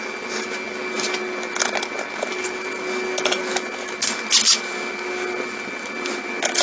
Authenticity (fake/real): real